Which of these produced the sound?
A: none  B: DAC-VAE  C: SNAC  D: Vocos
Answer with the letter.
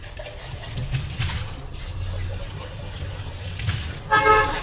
A